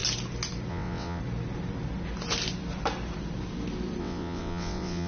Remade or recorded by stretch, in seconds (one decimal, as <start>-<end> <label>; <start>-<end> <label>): 0.0-0.7 recorded; 0.7-1.2 remade; 1.2-4.0 recorded; 4.0-5.1 remade